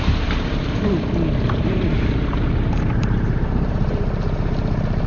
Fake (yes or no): yes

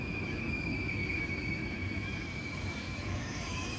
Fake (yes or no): yes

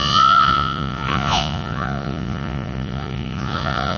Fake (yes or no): yes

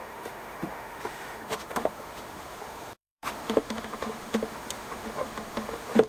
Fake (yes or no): yes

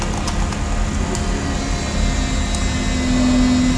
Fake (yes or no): no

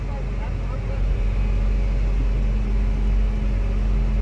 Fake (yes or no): no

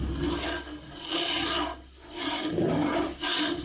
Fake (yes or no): no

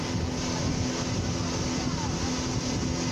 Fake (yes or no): no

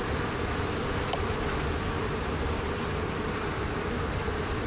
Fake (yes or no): no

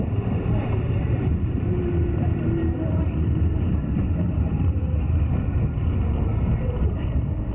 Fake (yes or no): yes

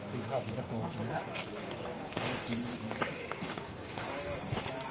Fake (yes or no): yes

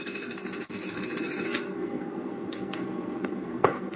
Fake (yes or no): yes